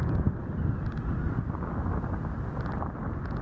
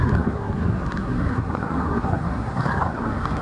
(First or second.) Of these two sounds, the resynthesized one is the second